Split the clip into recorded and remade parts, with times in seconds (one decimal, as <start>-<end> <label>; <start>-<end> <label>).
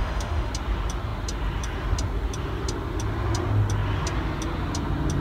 0.0-0.5 remade; 0.5-5.2 recorded